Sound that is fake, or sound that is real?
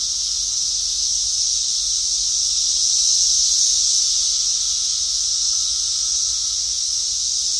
fake